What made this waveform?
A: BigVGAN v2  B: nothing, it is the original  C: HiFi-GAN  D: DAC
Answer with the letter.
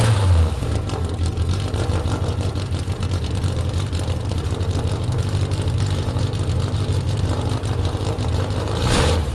A